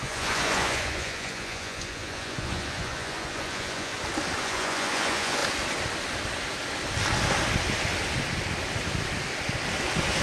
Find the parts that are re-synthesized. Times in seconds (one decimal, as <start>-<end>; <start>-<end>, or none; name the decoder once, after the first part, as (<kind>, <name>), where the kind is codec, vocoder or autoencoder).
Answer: 0.0-3.9 (vocoder, Vocos); 4.4-5.4